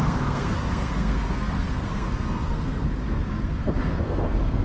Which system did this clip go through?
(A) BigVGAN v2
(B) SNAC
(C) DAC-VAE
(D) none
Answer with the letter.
B